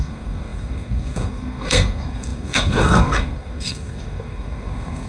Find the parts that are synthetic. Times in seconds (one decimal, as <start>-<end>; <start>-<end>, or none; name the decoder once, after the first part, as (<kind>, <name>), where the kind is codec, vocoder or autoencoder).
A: 0.0-5.1 (codec, SNAC)